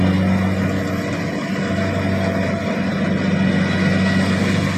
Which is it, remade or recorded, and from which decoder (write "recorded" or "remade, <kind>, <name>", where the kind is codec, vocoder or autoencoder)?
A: recorded